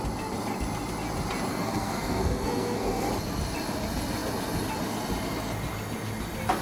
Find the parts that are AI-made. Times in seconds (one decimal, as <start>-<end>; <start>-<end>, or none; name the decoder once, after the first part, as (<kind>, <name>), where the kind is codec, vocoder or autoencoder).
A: 1.5-3.1 (codec, SNAC)